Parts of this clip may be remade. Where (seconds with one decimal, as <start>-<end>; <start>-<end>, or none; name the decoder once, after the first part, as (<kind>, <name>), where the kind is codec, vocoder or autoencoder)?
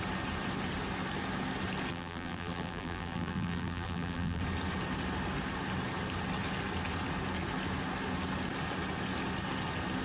1.9-4.4 (vocoder, BigVGAN v2)